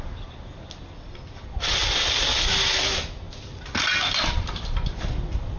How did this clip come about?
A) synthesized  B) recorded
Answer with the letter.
B